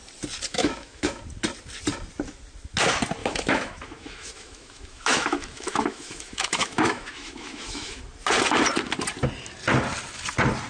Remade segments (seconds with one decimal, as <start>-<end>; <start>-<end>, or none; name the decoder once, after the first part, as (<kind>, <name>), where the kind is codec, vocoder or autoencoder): 0.5-1.2 (autoencoder, DAC-VAE); 3.2-8.0